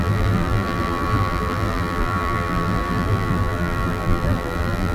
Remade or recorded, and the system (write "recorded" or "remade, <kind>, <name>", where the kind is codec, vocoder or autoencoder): remade, vocoder, BigVGAN v2